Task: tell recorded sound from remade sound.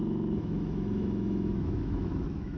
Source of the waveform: remade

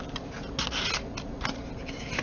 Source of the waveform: recorded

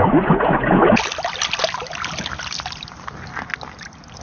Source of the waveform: recorded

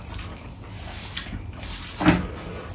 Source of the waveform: recorded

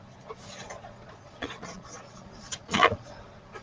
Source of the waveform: remade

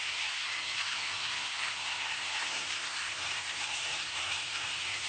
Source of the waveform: remade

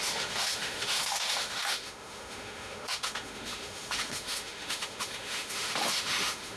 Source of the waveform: remade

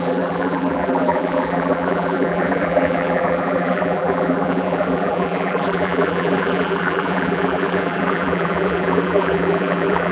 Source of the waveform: remade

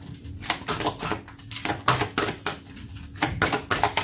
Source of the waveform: recorded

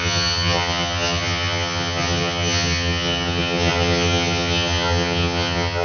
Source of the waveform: remade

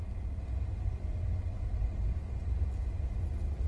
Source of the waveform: recorded